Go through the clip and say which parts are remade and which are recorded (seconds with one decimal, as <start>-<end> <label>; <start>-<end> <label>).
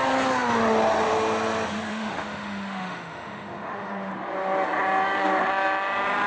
0.0-1.9 recorded; 1.9-4.1 remade; 4.1-6.3 recorded